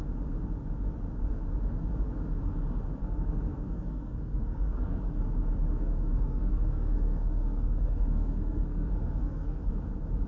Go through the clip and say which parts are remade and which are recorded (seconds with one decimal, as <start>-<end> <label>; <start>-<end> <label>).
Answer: 0.0-3.0 recorded; 3.0-5.0 remade; 5.0-5.7 recorded; 5.7-9.7 remade; 9.7-10.3 recorded